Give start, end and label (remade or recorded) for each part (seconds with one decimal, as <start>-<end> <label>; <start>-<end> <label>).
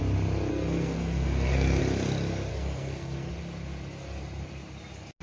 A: 0.0-0.5 recorded; 0.5-1.8 remade; 1.8-2.5 recorded; 2.5-3.3 remade; 3.3-5.2 recorded